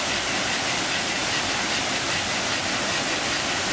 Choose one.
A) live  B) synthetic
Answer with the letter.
A